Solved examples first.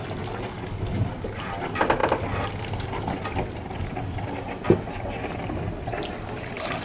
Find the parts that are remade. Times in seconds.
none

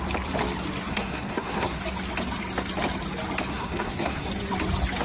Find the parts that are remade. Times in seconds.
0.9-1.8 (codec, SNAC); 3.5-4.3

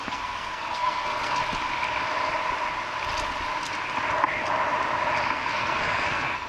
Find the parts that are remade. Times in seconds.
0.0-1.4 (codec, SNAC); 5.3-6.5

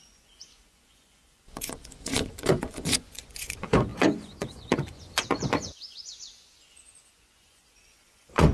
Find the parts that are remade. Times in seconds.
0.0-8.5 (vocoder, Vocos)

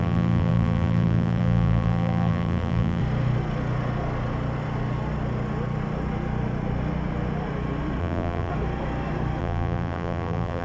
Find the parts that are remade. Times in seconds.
0.0-3.0 (vocoder, BigVGAN v2); 8.0-8.5; 9.4-10.6

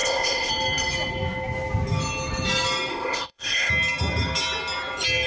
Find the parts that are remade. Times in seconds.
0.0-0.5 (codec, ZipCodec); 2.9-3.7